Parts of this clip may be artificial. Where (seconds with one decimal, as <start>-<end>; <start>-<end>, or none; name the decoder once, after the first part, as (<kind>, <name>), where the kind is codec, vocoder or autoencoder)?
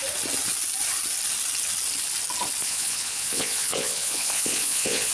2.6-5.1 (vocoder, Vocos)